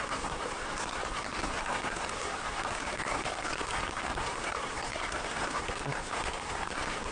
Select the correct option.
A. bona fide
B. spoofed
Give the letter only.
B